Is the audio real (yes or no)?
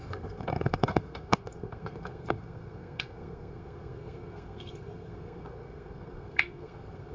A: no